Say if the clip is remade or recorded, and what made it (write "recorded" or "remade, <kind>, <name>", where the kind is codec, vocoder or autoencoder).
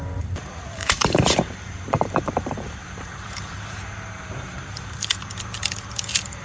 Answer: remade, vocoder, BigVGAN v2